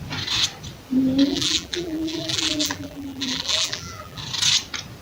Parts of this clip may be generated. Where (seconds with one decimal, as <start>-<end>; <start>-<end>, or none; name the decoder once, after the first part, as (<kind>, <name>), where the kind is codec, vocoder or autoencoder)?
1.2-4.2 (vocoder, BigVGAN v2)